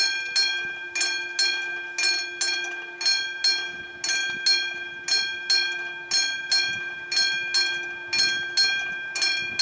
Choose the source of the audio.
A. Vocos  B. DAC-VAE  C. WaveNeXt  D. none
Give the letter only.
D